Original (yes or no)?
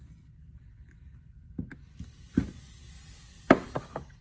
yes